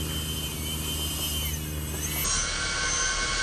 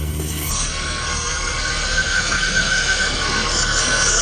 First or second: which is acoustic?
first